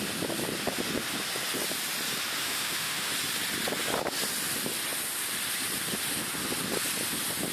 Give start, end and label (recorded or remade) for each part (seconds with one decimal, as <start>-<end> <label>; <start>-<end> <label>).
0.0-2.4 recorded; 2.4-3.1 remade; 3.1-7.5 recorded

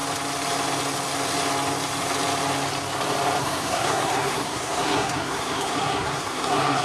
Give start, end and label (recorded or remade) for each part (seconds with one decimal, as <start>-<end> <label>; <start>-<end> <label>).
0.0-3.4 recorded; 3.4-6.8 remade

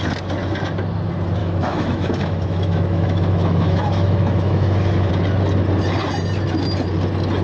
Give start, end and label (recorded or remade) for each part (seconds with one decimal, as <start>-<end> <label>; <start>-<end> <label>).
0.0-1.4 recorded; 1.4-5.1 remade; 5.1-7.4 recorded

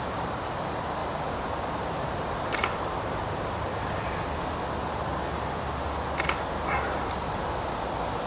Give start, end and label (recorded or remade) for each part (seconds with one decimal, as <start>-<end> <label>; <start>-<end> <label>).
0.0-1.0 recorded; 1.0-3.7 remade; 3.7-8.3 recorded

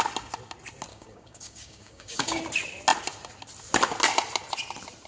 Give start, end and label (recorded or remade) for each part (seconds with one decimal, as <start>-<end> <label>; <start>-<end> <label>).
0.0-0.9 recorded; 0.9-2.4 remade; 2.4-5.1 recorded

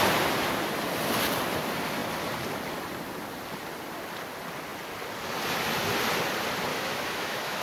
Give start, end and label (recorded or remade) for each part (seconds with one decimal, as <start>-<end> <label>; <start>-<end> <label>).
0.0-6.7 recorded; 6.7-7.6 remade